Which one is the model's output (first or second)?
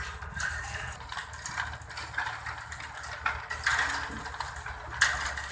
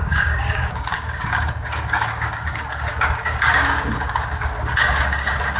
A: second